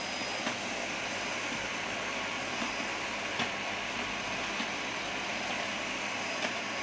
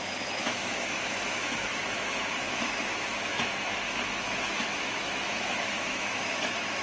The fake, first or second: second